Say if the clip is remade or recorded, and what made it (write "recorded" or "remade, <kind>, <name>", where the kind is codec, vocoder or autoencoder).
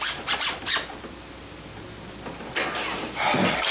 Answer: recorded